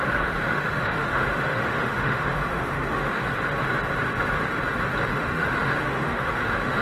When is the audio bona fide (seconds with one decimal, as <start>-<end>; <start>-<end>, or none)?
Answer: 3.2-5.1